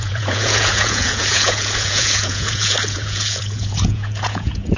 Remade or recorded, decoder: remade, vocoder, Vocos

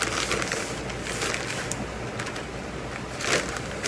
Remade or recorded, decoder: recorded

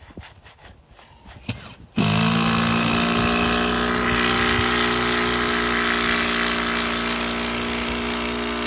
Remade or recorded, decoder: recorded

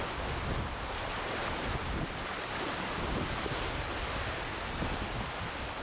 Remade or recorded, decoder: recorded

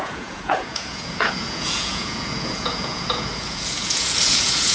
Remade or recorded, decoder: remade, vocoder, Vocos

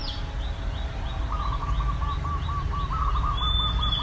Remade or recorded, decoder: recorded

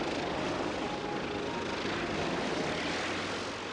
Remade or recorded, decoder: recorded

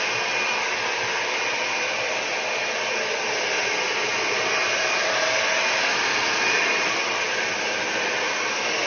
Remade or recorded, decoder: recorded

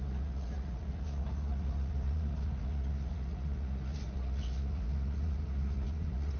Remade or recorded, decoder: remade, vocoder, Vocos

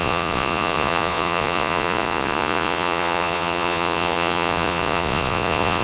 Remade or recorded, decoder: remade, vocoder, Vocos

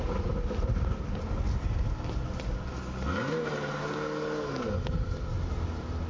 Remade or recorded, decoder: recorded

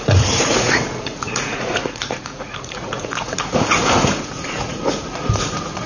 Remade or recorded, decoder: remade, vocoder, Vocos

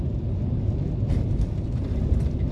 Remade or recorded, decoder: recorded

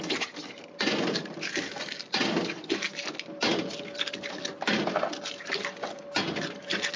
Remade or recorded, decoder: recorded